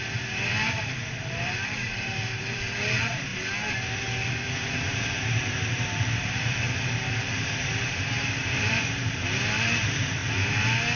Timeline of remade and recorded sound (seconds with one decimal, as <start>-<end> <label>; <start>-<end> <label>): 0.0-3.3 remade; 3.3-4.3 recorded; 4.3-10.2 remade; 10.2-11.0 recorded